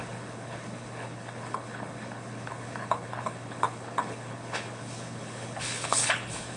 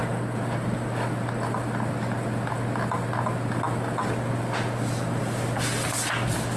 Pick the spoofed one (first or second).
first